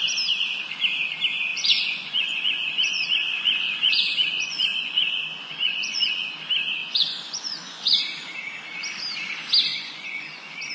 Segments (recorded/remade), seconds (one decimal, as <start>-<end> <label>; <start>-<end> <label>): 0.0-1.5 recorded; 1.5-6.3 remade; 6.3-6.8 recorded; 6.8-8.0 remade; 8.0-9.7 recorded; 9.7-10.7 remade